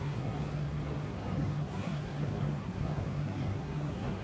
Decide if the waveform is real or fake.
fake